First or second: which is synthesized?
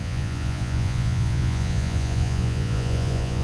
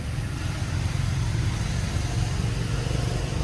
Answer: first